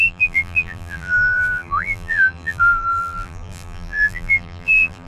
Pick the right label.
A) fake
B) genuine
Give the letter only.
A